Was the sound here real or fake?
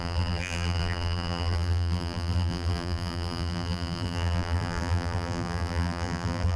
fake